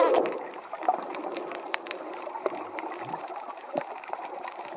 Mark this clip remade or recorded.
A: remade